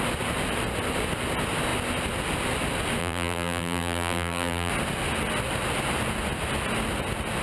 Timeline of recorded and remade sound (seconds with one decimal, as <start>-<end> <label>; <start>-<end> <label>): 0.0-3.0 recorded; 3.0-4.7 remade; 4.7-7.4 recorded